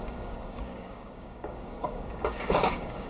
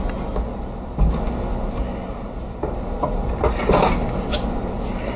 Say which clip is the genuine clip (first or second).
second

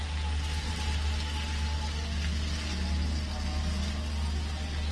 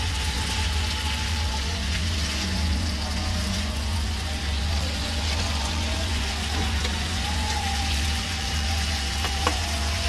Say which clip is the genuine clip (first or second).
first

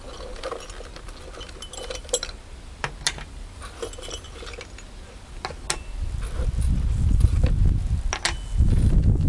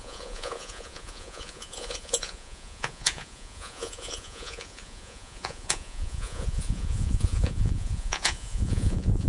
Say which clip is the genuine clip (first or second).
first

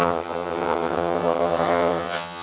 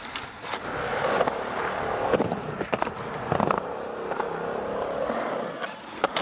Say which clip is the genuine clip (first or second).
second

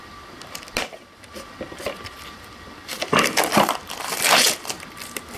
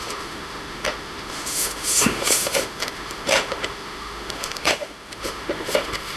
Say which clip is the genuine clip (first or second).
first